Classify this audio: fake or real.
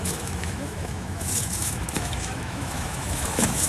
fake